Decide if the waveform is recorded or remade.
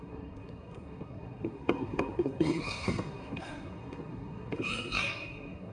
remade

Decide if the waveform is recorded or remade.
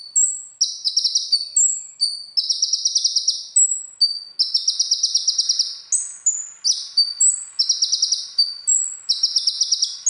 recorded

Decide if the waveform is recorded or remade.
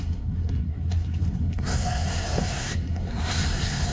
remade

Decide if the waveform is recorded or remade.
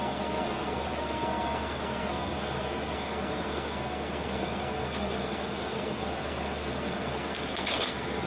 remade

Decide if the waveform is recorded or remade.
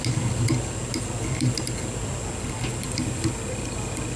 recorded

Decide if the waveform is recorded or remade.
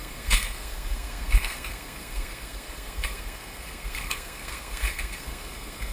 remade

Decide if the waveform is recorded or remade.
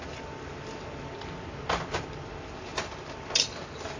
recorded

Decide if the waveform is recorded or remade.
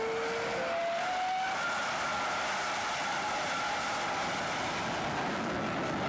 recorded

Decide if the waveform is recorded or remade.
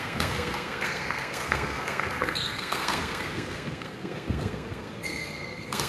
remade